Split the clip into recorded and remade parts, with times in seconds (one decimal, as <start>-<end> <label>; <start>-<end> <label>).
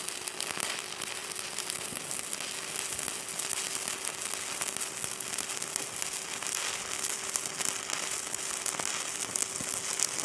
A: 0.0-10.2 recorded